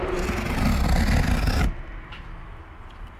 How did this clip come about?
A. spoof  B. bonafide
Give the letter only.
B